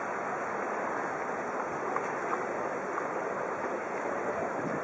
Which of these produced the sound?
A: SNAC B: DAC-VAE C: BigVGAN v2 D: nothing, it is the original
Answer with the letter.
D